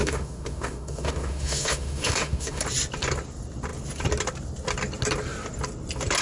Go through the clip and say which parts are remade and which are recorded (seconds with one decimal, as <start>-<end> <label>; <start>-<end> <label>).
0.0-2.6 remade; 2.6-6.2 recorded